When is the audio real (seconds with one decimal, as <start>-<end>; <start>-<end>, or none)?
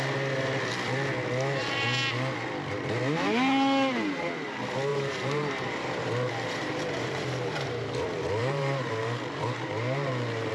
0.0-4.9; 7.7-8.4